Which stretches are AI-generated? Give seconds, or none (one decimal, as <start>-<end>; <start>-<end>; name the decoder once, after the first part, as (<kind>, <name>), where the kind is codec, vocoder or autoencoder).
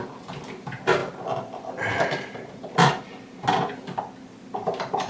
none